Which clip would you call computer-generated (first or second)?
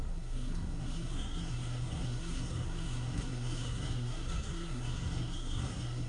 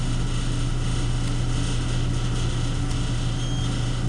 first